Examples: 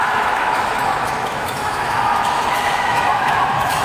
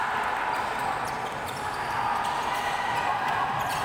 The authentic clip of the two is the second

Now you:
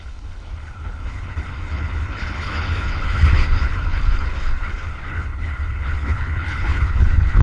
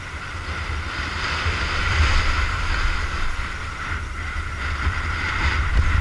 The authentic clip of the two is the second